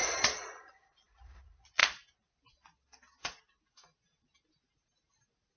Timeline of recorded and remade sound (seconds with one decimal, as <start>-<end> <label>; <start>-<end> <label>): 0.0-1.8 remade; 1.8-5.6 recorded